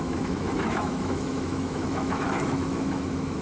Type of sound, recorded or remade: remade